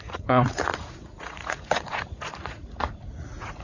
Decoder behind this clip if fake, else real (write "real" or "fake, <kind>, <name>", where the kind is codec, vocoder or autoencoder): fake, vocoder, Vocos